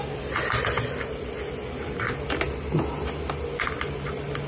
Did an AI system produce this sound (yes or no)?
no